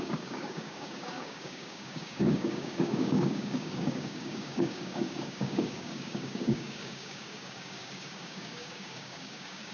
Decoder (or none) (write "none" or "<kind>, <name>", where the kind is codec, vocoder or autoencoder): codec, DAC